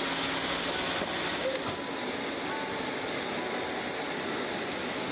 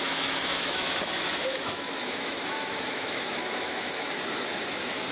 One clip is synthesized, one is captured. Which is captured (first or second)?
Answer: first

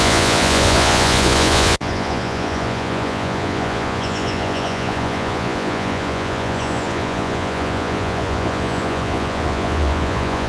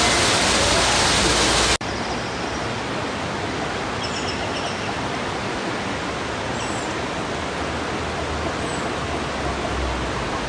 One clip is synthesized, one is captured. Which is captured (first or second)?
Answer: second